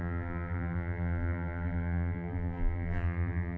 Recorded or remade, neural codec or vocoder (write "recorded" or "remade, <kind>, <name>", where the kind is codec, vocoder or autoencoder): remade, vocoder, BigVGAN v2